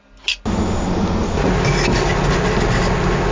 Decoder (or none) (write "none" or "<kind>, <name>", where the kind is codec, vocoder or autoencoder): none